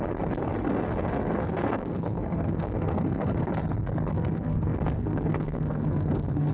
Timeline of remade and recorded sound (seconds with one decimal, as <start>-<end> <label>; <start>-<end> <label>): 0.0-0.5 recorded; 0.5-3.5 remade; 3.5-4.1 recorded; 4.1-6.5 remade